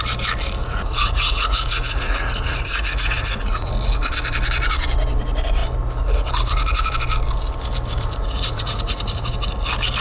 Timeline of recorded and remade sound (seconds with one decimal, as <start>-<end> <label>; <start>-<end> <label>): 0.0-0.6 recorded; 0.6-3.7 remade; 3.7-7.9 recorded; 7.9-9.3 remade; 9.3-10.0 recorded